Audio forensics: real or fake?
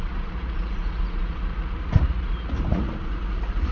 fake